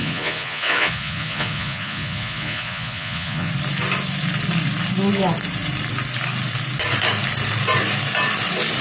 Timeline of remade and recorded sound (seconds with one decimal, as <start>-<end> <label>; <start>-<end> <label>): 0.0-3.5 remade; 3.5-8.8 recorded